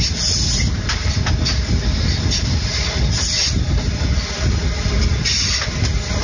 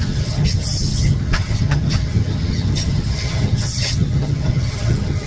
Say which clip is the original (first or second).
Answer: first